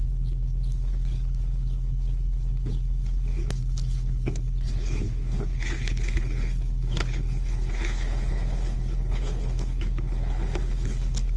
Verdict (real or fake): fake